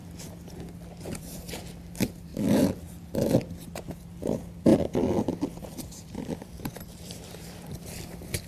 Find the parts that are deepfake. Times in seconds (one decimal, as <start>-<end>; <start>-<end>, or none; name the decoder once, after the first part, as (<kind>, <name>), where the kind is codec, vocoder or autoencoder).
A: 1.0-2.3 (vocoder, BigVGAN v2); 4.0-8.5